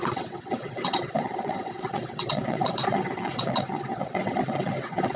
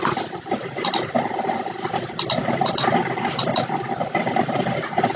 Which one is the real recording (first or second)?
second